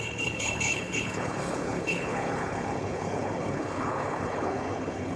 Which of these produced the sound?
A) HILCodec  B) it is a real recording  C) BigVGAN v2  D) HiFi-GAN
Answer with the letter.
A